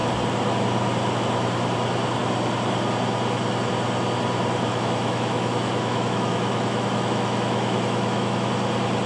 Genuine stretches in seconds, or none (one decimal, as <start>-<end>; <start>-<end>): 0.0-4.7; 8.5-9.1